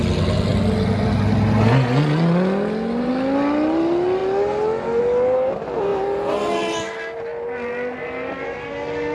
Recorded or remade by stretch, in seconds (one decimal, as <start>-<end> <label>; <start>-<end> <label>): 0.0-9.1 recorded